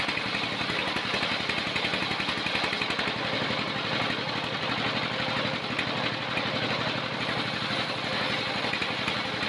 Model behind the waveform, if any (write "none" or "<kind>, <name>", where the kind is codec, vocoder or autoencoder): none